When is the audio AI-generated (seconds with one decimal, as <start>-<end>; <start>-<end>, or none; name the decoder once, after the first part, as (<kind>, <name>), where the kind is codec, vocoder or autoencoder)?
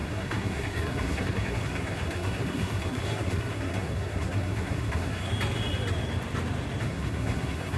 0.0-5.3 (codec, SNAC); 6.8-7.8